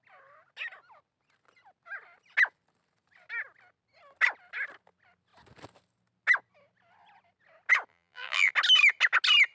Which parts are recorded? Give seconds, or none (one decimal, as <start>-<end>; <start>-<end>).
0.0-7.9; 8.5-9.5